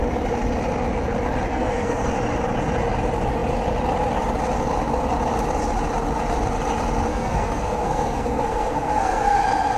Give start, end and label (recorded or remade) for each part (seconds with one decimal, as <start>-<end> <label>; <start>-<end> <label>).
0.0-1.5 recorded; 1.5-2.1 remade; 2.1-7.1 recorded; 7.1-9.4 remade; 9.4-9.8 recorded